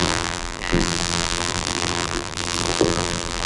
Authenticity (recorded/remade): remade